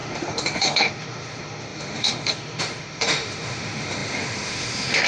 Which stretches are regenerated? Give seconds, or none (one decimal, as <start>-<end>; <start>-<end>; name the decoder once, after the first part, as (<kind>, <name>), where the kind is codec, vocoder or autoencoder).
0.0-5.1 (autoencoder, DAC-VAE)